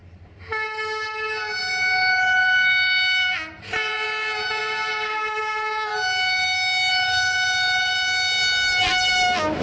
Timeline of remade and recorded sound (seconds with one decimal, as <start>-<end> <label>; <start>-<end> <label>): 0.0-3.6 recorded; 3.6-5.9 remade; 5.9-6.9 recorded; 6.9-7.9 remade; 7.9-9.6 recorded